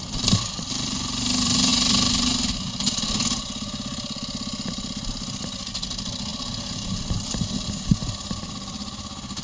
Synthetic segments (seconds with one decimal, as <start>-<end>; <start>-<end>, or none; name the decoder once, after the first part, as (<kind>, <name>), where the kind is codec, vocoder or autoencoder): none